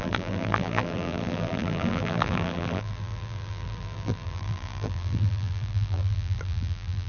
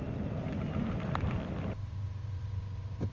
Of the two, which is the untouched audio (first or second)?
second